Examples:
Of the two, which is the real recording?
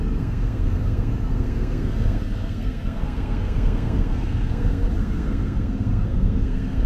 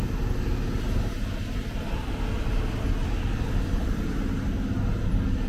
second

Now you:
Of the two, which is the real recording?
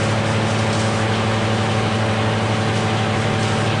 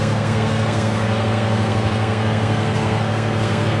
first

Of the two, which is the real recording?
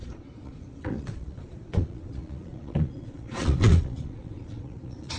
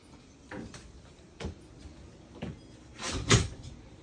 second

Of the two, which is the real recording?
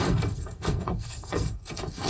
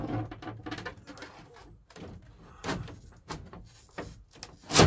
second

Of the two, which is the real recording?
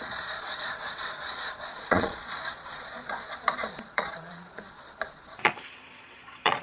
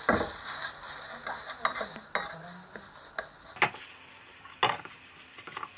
second